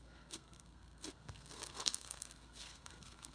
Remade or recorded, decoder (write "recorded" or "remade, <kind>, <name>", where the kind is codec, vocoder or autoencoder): remade, codec, SNAC